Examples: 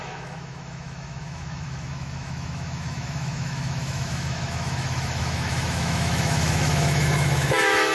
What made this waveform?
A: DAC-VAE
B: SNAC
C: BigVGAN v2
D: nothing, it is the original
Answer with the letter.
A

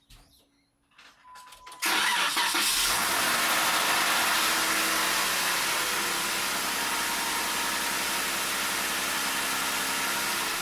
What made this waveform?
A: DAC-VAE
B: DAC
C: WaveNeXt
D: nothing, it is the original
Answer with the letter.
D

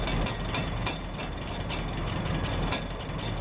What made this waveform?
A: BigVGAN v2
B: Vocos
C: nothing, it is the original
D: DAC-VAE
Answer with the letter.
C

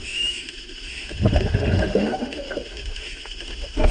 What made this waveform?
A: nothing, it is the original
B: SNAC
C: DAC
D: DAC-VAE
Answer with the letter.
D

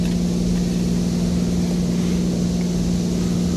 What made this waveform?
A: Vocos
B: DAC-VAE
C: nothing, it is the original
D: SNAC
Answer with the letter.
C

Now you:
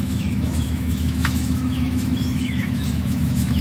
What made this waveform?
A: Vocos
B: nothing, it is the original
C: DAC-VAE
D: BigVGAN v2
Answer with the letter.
C